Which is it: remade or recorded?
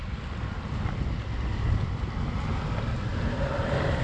recorded